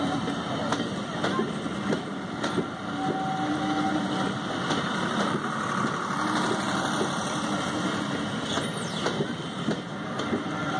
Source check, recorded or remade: recorded